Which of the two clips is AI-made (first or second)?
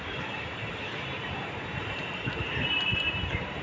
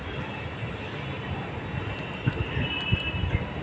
first